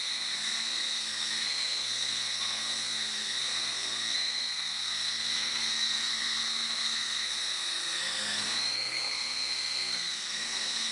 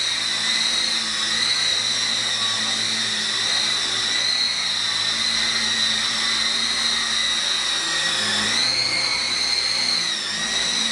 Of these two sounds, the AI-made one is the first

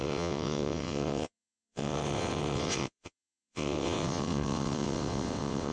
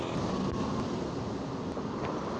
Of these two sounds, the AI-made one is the first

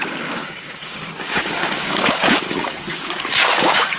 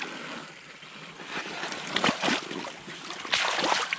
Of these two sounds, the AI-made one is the first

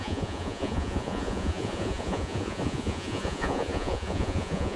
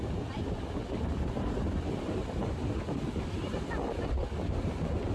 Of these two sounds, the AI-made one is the first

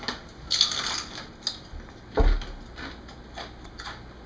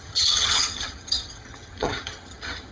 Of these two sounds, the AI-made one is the second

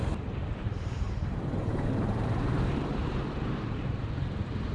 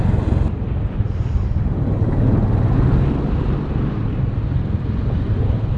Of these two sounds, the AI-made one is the first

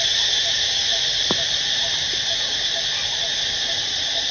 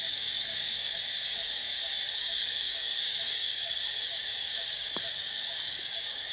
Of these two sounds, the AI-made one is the second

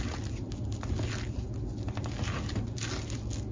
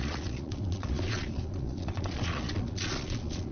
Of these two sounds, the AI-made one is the second